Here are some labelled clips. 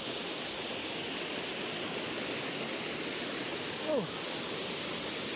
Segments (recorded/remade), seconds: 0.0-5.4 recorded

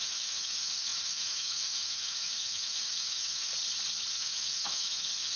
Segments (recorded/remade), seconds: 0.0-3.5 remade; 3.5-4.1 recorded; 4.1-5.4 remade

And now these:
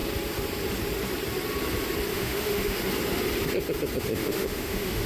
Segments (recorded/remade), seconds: 0.0-2.1 recorded; 2.1-2.8 remade; 2.8-4.1 recorded; 4.1-5.1 remade

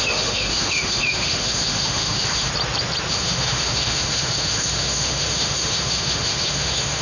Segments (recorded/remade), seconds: 0.0-2.5 remade; 2.5-3.1 recorded; 3.1-7.0 remade